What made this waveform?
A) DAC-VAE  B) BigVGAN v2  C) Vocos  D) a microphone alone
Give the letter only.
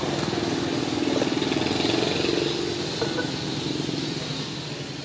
D